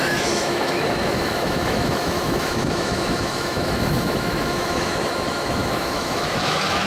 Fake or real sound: fake